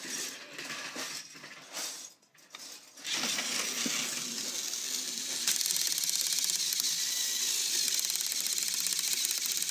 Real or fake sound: real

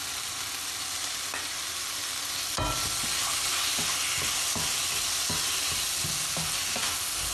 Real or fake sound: real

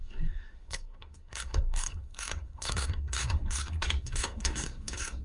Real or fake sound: fake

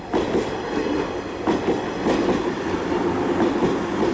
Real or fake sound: real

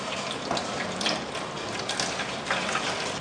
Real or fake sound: real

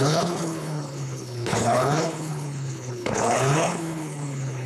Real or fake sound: fake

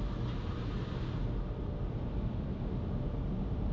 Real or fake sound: real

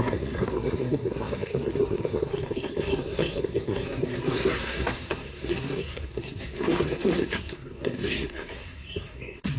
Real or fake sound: fake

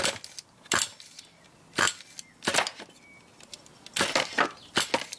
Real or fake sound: real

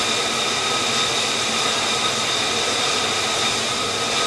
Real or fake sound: real